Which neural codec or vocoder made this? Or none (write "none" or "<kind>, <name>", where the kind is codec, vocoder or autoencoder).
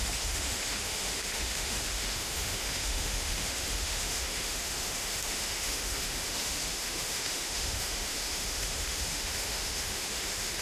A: autoencoder, DAC-VAE